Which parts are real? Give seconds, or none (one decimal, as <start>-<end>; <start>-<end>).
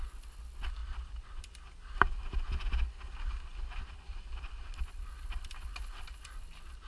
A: 0.0-0.8; 1.4-3.5; 6.3-6.9